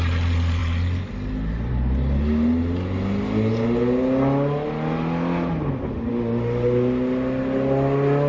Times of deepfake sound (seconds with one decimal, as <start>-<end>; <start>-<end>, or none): none